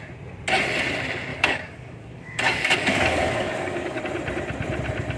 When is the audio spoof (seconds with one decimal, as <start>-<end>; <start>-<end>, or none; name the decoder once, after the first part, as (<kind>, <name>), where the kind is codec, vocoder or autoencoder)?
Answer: 1.3-4.0 (codec, DAC)